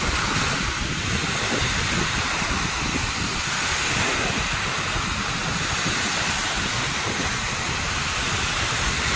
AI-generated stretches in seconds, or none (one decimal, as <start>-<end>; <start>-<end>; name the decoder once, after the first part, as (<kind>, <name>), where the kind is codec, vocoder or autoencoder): none